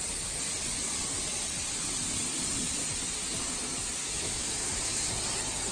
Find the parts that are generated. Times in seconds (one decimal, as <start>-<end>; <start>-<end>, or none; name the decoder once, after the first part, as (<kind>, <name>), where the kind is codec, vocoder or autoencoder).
4.0-5.1 (autoencoder, DAC-VAE)